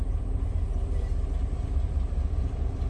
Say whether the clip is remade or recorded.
remade